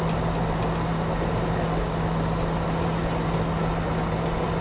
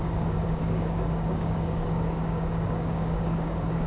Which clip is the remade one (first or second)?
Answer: second